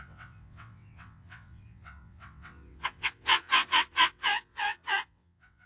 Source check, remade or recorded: remade